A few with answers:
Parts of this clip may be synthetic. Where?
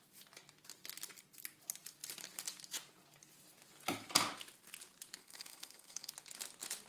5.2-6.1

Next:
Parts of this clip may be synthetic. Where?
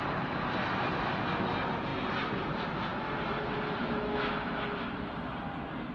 3.8-4.9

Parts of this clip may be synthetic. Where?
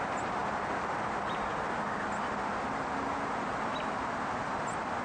none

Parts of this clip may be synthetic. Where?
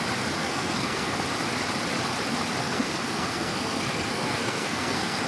0.4-1.2; 2.6-5.3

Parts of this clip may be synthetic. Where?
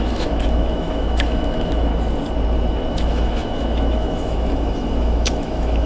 0.0-1.9; 2.9-5.9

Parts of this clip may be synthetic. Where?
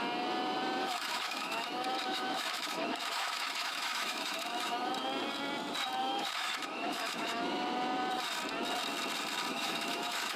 0.8-4.9; 6.0-7.5; 9.5-10.4